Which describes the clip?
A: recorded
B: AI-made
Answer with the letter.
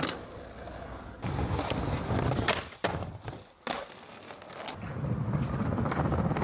A